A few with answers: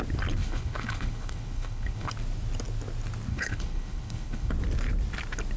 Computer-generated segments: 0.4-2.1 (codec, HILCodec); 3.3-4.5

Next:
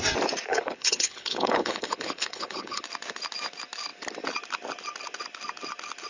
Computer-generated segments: 0.5-2.8 (codec, HILCodec)

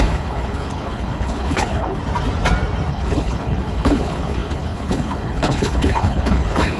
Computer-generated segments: 0.0-2.0 (codec, HILCodec); 2.9-6.8

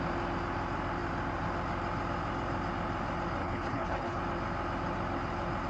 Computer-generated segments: 3.4-4.2 (codec, HILCodec)

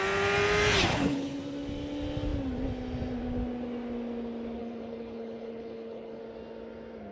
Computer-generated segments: 0.9-1.4 (codec, HILCodec); 4.6-6.2

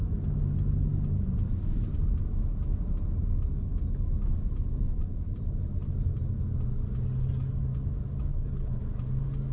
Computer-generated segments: 8.3-8.8 (codec, HILCodec)

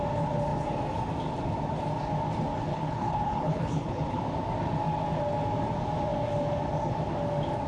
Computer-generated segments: 2.7-4.2 (codec, HILCodec)